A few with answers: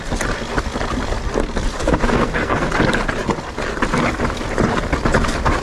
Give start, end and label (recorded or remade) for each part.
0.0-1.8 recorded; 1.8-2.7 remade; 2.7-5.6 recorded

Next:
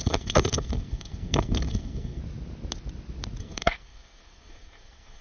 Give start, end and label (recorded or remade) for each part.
0.0-2.2 remade; 2.2-3.4 recorded; 3.4-5.2 remade

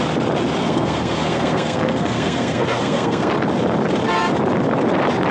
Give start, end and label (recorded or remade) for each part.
0.0-0.6 recorded; 0.6-3.3 remade; 3.3-5.3 recorded

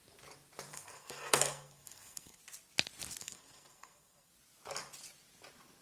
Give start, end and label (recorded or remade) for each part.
0.0-0.7 recorded; 0.7-2.4 remade; 2.4-3.2 recorded; 3.2-4.3 remade; 4.3-5.8 recorded